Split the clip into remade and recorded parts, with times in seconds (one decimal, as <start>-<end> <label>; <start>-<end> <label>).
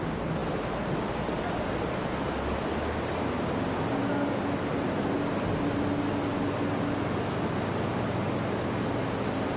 0.0-9.6 recorded